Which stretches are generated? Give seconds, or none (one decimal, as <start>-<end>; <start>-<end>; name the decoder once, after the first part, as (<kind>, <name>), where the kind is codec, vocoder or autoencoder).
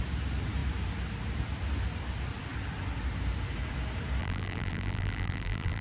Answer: 4.2-5.8 (vocoder, BigVGAN v2)